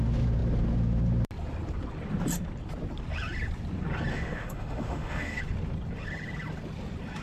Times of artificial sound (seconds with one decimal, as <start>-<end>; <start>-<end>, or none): 4.1-5.4